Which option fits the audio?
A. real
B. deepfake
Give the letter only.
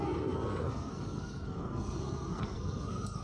B